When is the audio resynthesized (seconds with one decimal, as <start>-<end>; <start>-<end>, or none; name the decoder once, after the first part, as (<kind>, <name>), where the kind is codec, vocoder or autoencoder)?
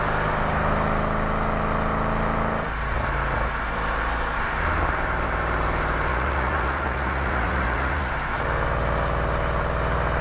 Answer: 6.1-8.1 (vocoder, Vocos)